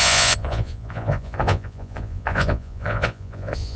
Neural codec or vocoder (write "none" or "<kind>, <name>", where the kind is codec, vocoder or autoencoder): vocoder, Vocos